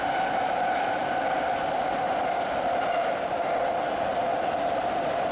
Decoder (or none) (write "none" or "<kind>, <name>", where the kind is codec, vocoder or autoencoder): none